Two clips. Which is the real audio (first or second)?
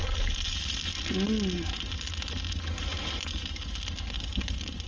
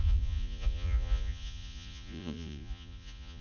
first